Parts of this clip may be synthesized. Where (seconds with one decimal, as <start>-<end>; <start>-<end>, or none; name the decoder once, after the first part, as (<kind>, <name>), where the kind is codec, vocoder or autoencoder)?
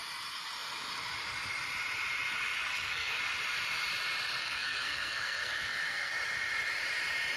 2.7-3.2 (codec, SNAC); 4.4-6.1